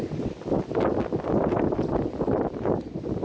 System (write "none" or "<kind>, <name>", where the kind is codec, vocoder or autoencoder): none